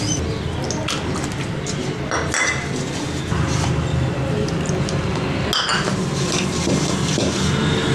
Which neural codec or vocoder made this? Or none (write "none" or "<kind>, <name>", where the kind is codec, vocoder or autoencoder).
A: none